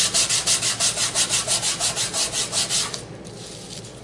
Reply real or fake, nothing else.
real